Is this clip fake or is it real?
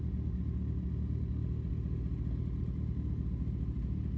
real